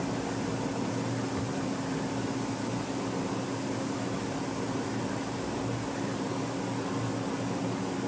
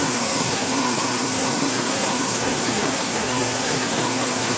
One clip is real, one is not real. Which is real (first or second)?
first